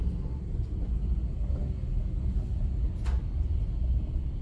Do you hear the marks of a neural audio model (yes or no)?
no